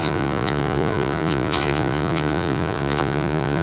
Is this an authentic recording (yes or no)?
no